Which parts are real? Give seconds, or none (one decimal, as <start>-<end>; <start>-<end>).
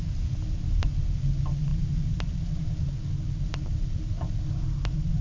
0.0-5.2